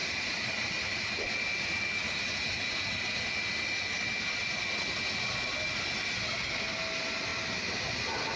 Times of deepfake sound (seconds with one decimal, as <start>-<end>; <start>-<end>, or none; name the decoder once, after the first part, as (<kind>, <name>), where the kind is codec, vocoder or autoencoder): none